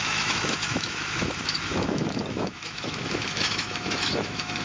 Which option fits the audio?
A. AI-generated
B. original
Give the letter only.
A